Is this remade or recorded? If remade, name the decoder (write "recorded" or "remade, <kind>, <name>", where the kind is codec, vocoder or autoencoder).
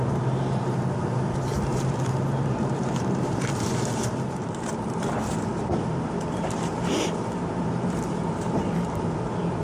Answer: remade, vocoder, BigVGAN v2